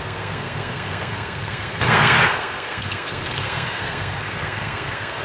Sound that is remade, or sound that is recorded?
remade